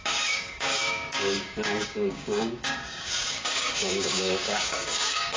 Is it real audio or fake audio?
fake